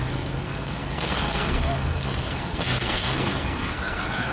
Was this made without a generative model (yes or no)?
no